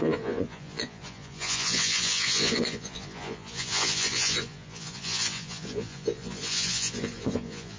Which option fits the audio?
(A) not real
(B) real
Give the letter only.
A